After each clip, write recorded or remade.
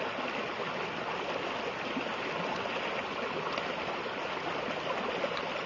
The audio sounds recorded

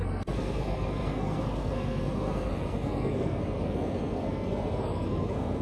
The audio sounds remade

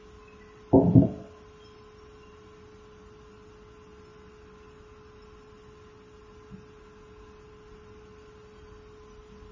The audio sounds recorded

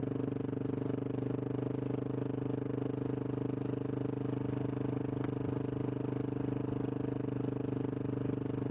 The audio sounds recorded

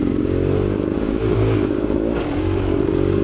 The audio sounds remade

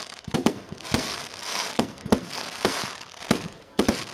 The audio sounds remade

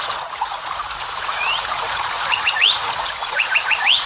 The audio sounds remade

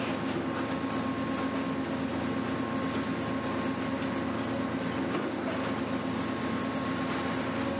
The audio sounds recorded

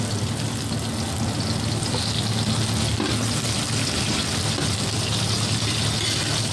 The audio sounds recorded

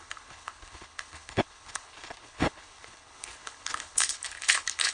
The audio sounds remade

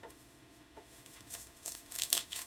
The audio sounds remade